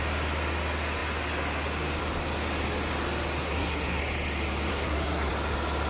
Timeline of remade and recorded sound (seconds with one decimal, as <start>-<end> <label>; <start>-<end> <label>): 0.0-3.4 recorded; 3.4-4.0 remade; 4.0-4.7 recorded; 4.7-5.3 remade; 5.3-5.9 recorded